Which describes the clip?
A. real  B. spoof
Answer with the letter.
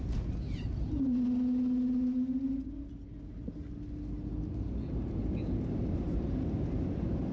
A